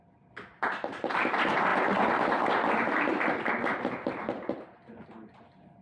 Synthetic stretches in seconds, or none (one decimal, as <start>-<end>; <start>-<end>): none